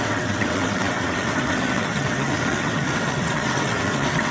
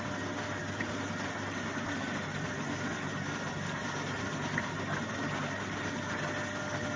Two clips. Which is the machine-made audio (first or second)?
first